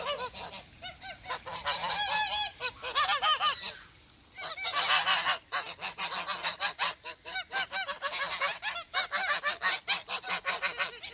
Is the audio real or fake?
real